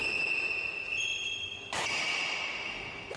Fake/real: real